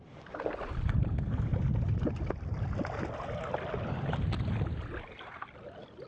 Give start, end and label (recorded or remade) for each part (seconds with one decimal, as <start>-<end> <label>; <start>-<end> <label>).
0.0-1.5 remade; 1.5-5.2 recorded; 5.2-6.1 remade